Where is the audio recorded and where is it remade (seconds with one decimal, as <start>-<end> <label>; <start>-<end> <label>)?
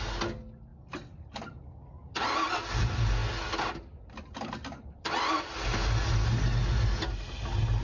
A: 0.0-7.8 recorded